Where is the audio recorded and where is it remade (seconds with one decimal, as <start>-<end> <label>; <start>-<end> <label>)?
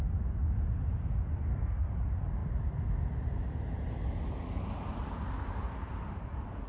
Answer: 0.0-1.5 recorded; 1.5-2.0 remade; 2.0-6.7 recorded